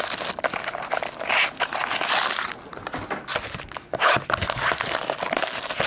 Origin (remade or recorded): recorded